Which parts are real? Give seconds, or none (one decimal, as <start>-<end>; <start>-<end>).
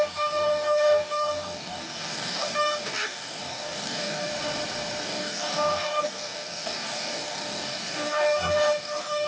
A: 4.3-5.0